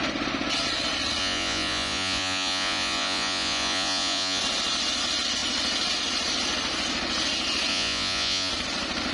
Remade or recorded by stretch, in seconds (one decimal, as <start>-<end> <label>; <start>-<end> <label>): 0.0-1.2 recorded; 1.2-4.4 remade; 4.4-7.7 recorded; 7.7-8.5 remade; 8.5-9.1 recorded